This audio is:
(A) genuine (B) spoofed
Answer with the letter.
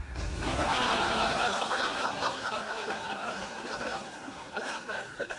B